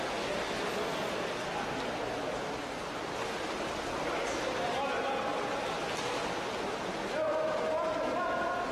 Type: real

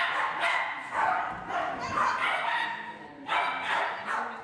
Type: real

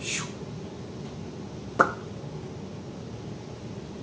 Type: real